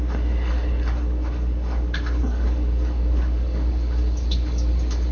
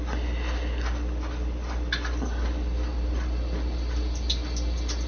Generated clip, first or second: first